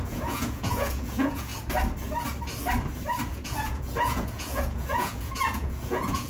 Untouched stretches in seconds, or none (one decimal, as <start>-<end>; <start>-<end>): 1.5-3.3

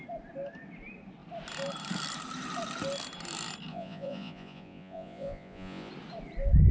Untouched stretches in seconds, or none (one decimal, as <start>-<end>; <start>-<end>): 0.0-3.7; 5.9-6.7

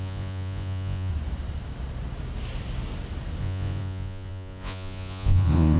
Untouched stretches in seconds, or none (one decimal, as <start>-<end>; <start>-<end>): 1.1-3.4